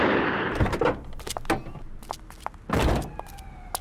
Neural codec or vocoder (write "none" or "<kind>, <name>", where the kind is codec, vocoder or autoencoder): none